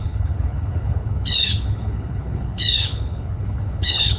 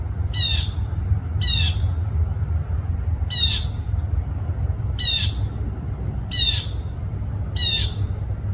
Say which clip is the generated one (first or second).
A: first